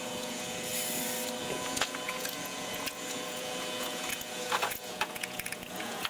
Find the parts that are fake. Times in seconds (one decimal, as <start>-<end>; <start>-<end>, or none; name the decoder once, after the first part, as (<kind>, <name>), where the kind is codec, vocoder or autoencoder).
0.0-0.7 (vocoder, Vocos); 1.4-6.1